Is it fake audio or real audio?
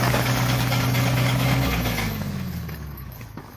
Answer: fake